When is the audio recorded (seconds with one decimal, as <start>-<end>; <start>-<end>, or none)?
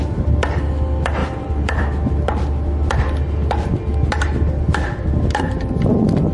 0.0-1.2; 1.9-6.3